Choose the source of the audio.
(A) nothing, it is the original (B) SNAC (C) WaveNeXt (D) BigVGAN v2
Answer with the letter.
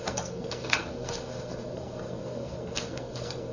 B